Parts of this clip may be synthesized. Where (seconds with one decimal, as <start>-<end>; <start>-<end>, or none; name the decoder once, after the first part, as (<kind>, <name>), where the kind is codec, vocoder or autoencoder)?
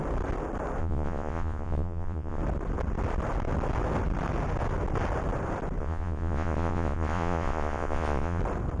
0.8-2.4 (vocoder, Vocos); 5.8-8.4